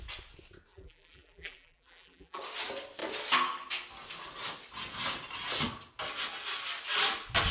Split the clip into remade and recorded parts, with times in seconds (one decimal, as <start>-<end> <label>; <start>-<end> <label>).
0.0-0.7 recorded; 0.7-2.4 remade; 2.4-7.5 recorded